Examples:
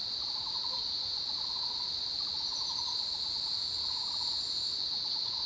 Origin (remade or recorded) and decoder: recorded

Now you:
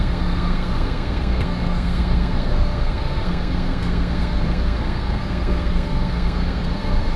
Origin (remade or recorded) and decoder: remade, codec, SNAC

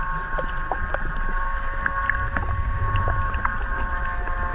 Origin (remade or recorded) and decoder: recorded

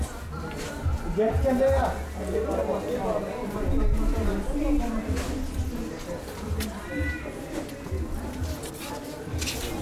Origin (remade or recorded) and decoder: recorded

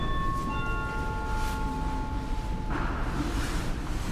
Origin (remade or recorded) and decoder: recorded